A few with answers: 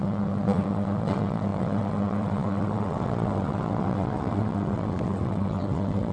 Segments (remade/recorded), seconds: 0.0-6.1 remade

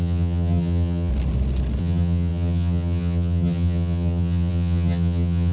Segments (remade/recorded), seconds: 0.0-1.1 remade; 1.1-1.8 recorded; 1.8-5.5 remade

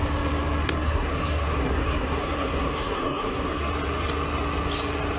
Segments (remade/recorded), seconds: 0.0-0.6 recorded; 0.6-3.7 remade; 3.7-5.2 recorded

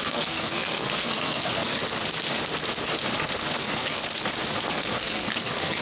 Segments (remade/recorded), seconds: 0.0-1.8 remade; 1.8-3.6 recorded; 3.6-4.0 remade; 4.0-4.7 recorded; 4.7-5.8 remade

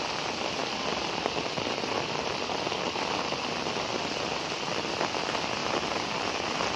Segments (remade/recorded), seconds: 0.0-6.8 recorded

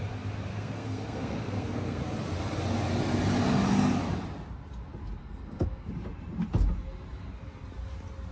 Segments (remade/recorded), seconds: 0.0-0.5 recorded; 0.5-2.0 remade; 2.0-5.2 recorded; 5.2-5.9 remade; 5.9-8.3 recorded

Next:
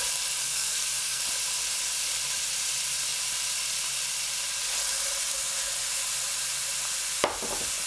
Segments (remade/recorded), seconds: 0.0-0.4 recorded; 0.4-1.2 remade; 1.2-7.9 recorded